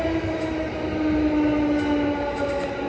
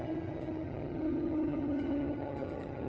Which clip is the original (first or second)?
first